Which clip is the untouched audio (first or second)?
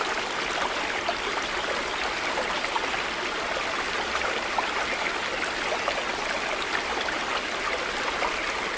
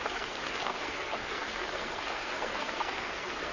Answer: first